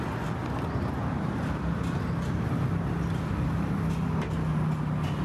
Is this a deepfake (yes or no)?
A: no